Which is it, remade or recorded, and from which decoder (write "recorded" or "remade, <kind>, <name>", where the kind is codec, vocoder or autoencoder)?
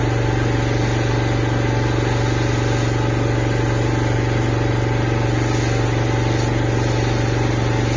recorded